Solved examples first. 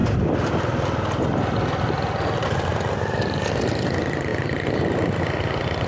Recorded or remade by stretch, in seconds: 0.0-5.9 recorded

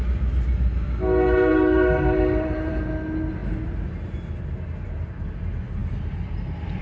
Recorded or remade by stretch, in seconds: 0.0-1.5 recorded; 1.5-2.9 remade; 2.9-6.8 recorded

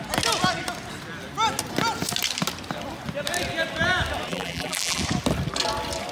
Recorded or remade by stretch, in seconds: 0.0-4.3 recorded; 4.3-5.0 remade; 5.0-6.1 recorded

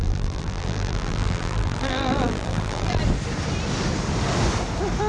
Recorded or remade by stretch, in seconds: 0.0-3.0 remade; 3.0-5.1 recorded